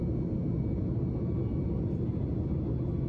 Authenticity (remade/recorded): recorded